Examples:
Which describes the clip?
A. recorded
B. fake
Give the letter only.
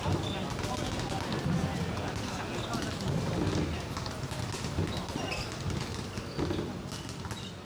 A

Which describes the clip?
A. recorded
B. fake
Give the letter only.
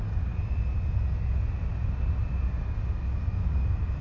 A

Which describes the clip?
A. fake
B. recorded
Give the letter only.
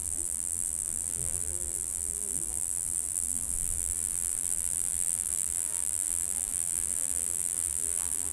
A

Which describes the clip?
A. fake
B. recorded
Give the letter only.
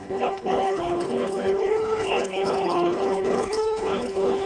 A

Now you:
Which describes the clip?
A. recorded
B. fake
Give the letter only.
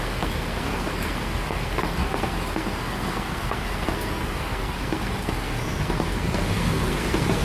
B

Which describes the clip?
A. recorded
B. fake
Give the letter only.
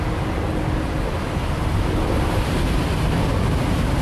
A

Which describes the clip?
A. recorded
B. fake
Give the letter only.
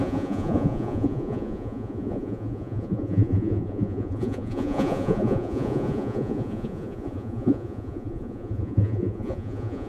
B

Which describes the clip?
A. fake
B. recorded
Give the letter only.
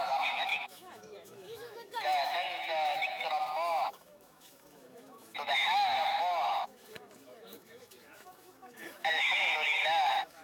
A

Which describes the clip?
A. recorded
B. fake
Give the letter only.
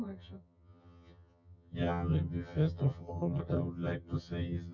B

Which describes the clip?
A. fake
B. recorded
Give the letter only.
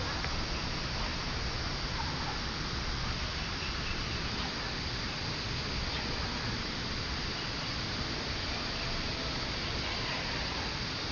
B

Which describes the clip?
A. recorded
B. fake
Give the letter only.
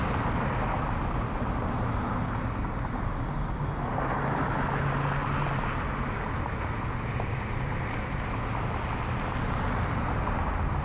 A